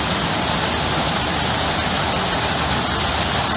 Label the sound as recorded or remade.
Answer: recorded